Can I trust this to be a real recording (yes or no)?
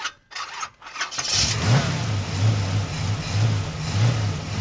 yes